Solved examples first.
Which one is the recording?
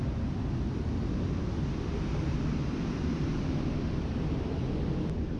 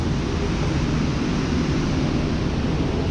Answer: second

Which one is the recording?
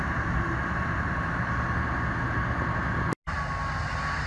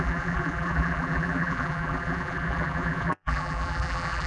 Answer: first